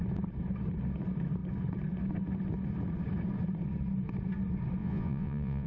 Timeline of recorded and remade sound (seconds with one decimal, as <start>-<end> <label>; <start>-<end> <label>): 0.0-4.8 recorded; 4.8-5.7 remade